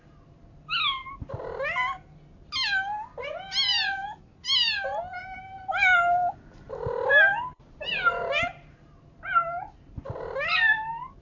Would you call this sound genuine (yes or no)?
yes